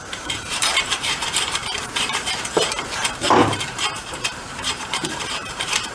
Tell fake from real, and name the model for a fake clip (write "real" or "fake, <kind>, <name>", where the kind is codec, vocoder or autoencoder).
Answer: fake, vocoder, BigVGAN v2